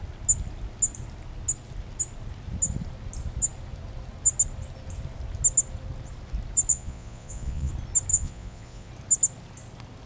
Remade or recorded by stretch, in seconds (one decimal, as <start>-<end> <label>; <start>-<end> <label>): 0.0-6.7 recorded; 6.7-7.7 remade; 7.7-8.1 recorded; 8.1-8.9 remade; 8.9-10.1 recorded